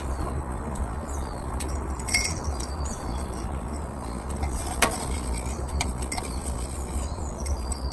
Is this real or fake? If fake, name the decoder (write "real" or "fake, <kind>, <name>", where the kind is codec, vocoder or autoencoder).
fake, vocoder, Vocos